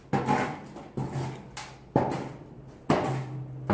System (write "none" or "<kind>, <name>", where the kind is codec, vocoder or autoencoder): none